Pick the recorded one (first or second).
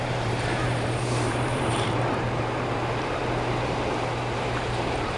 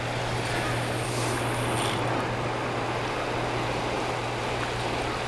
second